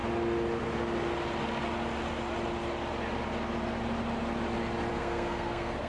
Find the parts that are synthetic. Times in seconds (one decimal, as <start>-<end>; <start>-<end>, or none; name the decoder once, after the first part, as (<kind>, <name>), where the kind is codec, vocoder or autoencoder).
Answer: 4.9-5.9 (codec, SNAC)